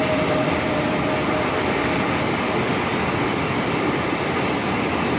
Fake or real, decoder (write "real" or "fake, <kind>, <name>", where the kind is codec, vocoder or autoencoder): real